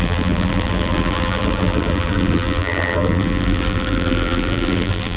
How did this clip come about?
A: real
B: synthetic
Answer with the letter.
B